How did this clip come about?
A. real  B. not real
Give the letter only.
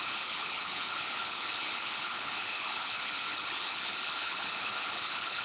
B